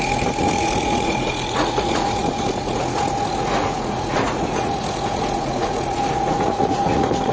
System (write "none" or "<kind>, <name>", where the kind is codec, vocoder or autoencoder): vocoder, Vocos